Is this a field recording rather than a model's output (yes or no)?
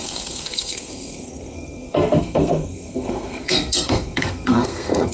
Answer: no